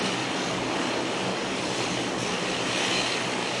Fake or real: fake